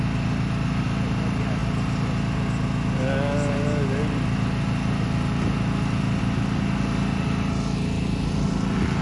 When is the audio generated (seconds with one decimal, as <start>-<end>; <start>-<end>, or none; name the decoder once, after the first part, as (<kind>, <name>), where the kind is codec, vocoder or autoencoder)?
none